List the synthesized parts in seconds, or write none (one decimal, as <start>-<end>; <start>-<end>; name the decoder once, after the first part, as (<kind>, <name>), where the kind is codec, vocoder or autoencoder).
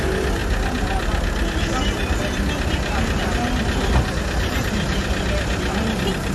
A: none